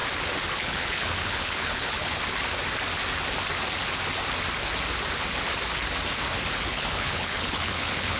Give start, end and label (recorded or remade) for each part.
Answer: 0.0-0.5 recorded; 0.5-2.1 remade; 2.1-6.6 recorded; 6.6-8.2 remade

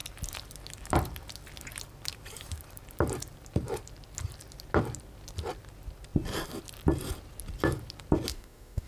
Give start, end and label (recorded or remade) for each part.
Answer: 0.0-8.3 recorded; 8.3-8.9 remade

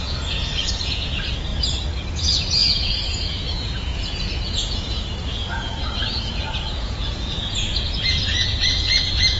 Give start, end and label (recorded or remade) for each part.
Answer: 0.0-1.5 remade; 1.5-2.1 recorded; 2.1-9.4 remade

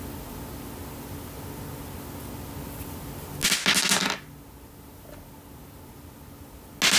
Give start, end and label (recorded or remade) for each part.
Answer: 0.0-7.0 recorded

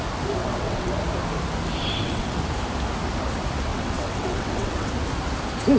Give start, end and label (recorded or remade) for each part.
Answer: 0.0-0.4 recorded; 0.4-0.9 remade; 0.9-1.8 recorded; 1.8-2.4 remade; 2.4-3.7 recorded; 3.7-4.9 remade; 4.9-5.8 recorded